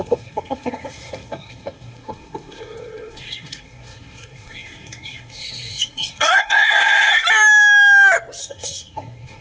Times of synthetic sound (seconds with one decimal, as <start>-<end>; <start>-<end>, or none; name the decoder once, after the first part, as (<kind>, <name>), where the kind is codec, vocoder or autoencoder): 0.0-7.1 (codec, SNAC); 8.4-9.4